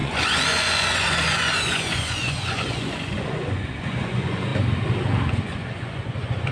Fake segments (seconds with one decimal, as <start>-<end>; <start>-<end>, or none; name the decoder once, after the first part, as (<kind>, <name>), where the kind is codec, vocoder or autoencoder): 0.0-4.5 (vocoder, Vocos); 5.3-6.5